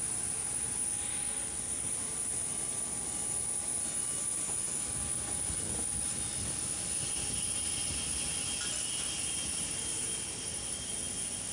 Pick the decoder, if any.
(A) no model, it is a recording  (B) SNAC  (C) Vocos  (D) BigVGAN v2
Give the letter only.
A